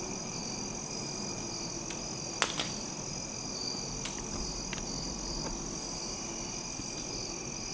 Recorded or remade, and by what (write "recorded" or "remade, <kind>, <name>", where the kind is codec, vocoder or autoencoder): recorded